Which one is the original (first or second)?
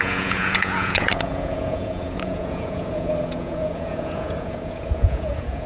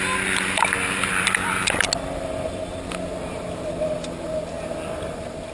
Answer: second